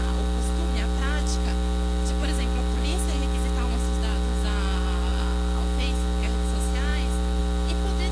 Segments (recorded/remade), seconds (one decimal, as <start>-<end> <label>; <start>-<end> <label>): 0.0-8.1 recorded